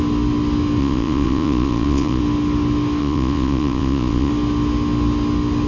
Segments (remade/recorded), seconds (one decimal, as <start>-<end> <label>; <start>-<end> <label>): 0.0-0.8 recorded; 0.8-2.2 remade; 2.2-3.0 recorded; 3.0-4.3 remade; 4.3-5.7 recorded